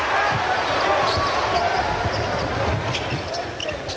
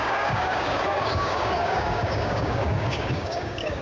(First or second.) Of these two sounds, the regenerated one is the second